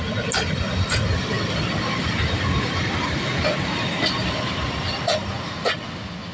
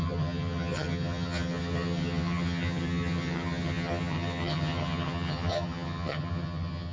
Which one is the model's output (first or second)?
second